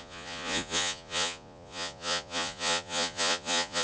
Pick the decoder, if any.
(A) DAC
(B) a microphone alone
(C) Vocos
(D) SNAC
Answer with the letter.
C